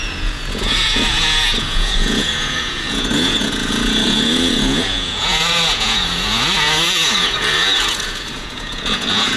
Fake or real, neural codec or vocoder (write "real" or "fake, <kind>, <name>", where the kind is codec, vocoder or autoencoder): fake, vocoder, Vocos